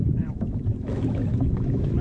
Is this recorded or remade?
remade